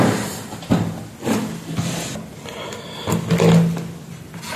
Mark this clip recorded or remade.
recorded